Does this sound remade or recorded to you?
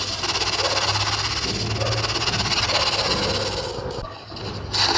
recorded